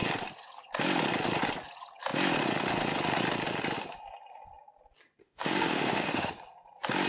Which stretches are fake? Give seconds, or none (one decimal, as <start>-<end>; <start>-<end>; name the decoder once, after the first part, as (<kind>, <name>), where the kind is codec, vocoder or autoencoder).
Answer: 5.2-6.3 (autoencoder, DAC-VAE)